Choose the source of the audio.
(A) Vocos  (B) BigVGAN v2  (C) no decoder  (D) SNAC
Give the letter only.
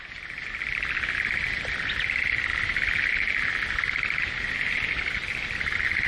C